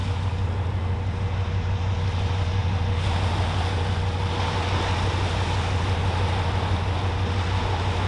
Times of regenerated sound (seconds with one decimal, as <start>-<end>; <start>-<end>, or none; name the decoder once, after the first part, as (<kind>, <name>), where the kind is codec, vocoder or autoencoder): none